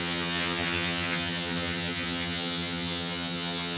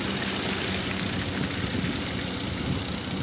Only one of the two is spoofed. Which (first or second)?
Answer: first